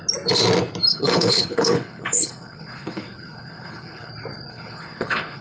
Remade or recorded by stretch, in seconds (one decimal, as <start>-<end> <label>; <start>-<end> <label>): 0.0-0.9 recorded; 0.9-4.1 remade; 4.1-4.5 recorded; 4.5-5.4 remade